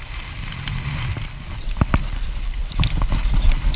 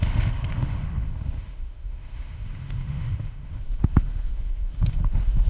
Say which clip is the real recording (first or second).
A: first